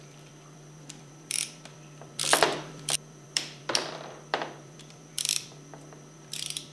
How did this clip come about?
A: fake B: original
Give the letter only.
A